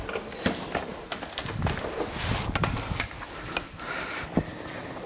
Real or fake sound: real